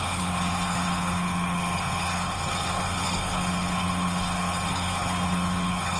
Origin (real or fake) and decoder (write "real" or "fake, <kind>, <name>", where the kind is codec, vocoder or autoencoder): fake, codec, HILCodec